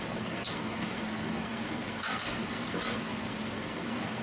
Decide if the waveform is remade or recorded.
remade